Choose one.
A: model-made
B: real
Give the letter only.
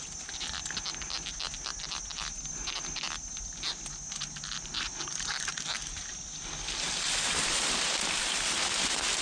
B